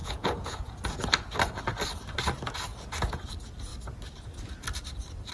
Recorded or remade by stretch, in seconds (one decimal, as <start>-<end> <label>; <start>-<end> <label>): 0.0-1.3 remade; 1.3-2.7 recorded; 2.7-3.3 remade; 3.3-5.3 recorded